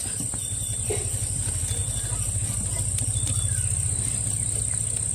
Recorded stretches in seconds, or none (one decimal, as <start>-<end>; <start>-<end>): 0.0-5.1